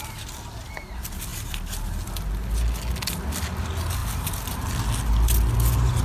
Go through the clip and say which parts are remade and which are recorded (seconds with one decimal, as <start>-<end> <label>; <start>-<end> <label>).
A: 0.0-6.0 recorded